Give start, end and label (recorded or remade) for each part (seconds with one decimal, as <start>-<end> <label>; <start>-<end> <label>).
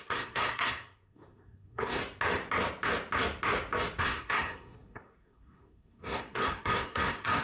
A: 0.0-2.0 remade; 2.0-4.0 recorded; 4.0-7.4 remade